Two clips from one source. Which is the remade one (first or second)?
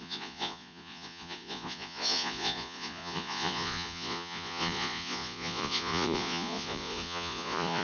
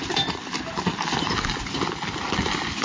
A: first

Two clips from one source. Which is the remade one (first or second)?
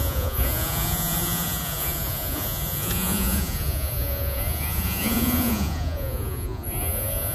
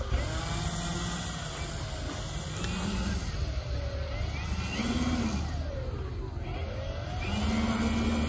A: first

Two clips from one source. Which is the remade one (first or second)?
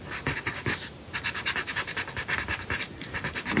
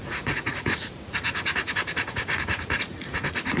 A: second